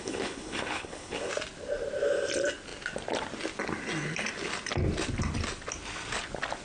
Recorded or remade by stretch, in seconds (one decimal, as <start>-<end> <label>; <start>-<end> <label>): 0.0-1.3 remade; 1.3-6.6 recorded